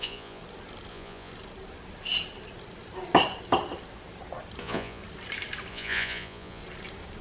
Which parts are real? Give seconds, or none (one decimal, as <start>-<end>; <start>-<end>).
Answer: 0.4-0.9; 1.3-4.6; 5.0-5.7; 6.6-7.2

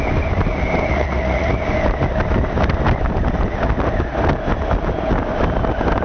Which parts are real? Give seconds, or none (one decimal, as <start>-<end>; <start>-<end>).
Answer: 0.0-0.9; 1.6-6.0

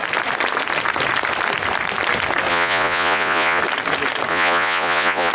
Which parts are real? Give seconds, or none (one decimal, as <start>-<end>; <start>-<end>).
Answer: 0.0-2.5; 3.6-4.3